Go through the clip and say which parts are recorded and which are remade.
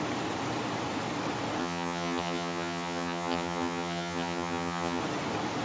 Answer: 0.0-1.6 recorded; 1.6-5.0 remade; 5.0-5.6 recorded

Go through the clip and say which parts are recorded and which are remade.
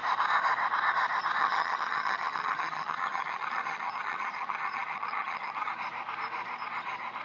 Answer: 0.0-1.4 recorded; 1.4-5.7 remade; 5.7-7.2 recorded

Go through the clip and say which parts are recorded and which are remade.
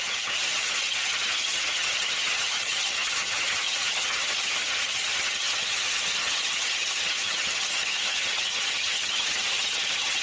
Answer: 0.0-10.2 remade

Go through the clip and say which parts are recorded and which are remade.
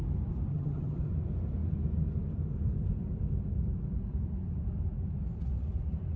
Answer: 0.0-0.5 recorded; 0.5-1.1 remade; 1.1-6.2 recorded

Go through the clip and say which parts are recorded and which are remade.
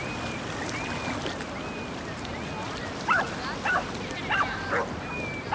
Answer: 0.0-5.5 recorded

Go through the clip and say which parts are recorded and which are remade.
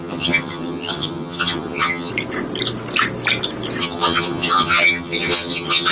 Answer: 0.0-2.1 remade; 2.1-3.8 recorded; 3.8-5.9 remade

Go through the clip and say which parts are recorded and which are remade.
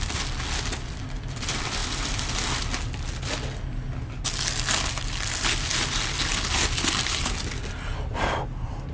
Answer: 0.0-8.9 recorded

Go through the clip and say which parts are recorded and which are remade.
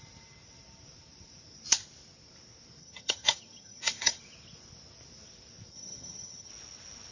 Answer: 0.0-2.8 recorded; 2.8-4.2 remade; 4.2-5.7 recorded; 5.7-6.5 remade; 6.5-7.1 recorded